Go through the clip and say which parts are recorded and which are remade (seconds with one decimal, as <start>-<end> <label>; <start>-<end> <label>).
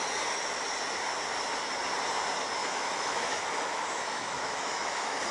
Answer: 0.0-2.6 recorded; 2.6-5.3 remade